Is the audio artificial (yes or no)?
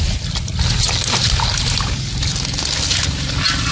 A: no